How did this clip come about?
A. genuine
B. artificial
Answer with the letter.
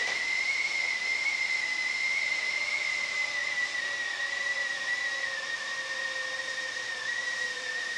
B